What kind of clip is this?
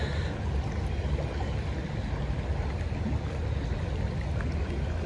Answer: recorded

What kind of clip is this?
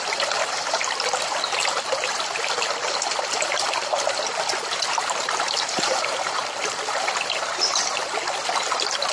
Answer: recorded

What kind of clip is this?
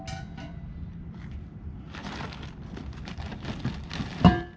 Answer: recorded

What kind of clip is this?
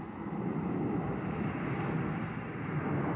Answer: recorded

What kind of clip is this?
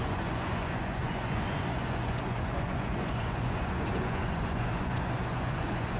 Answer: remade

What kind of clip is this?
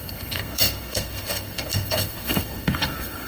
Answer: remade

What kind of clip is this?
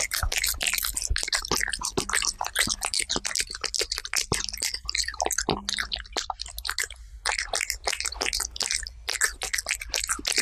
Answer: recorded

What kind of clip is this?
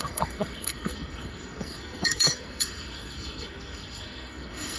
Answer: remade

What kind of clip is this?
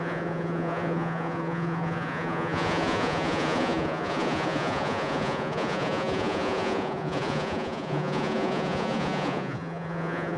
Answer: remade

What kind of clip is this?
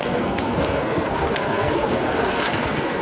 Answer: remade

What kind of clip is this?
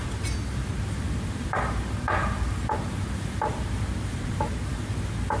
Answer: remade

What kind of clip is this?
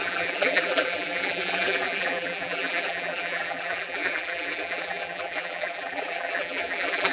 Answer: remade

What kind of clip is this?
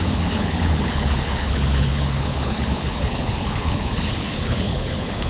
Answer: remade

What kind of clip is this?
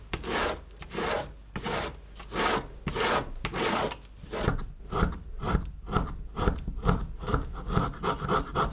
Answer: recorded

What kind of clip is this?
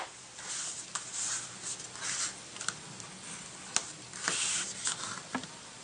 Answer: recorded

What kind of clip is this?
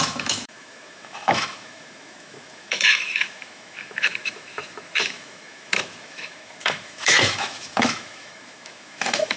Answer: remade